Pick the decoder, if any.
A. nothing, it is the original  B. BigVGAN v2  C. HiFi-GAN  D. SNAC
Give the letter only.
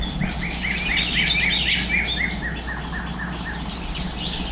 A